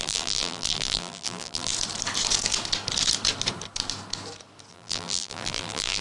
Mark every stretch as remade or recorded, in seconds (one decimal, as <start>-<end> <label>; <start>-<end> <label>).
0.0-1.7 remade; 1.7-4.7 recorded; 4.7-6.0 remade